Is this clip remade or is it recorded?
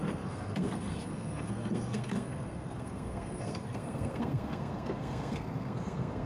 remade